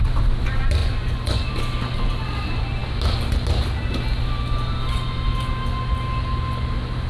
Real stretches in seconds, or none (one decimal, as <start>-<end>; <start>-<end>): 0.0-0.8; 1.5-7.1